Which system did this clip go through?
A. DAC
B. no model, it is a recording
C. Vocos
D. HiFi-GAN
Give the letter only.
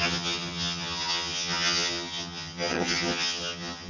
D